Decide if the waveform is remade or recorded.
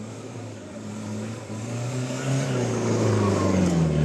remade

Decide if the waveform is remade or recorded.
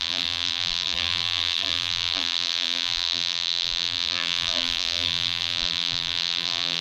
remade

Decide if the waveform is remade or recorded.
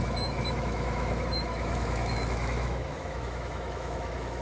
remade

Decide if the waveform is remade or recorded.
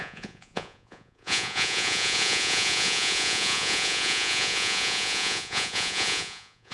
remade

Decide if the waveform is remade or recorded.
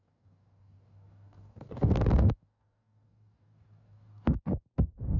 remade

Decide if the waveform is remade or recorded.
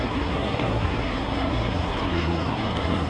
remade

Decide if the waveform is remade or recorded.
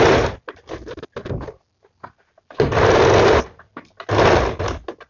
recorded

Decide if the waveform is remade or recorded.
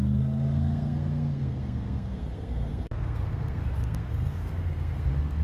remade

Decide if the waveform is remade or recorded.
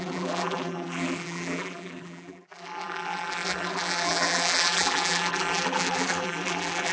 remade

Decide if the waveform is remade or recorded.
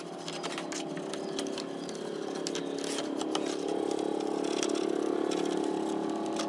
recorded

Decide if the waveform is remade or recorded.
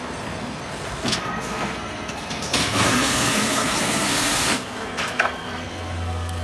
remade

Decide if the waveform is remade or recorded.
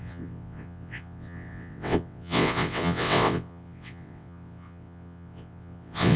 remade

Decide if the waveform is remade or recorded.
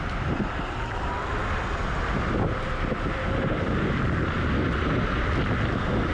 recorded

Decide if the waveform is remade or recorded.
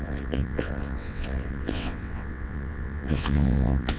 remade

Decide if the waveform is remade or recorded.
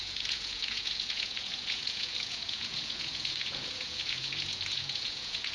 remade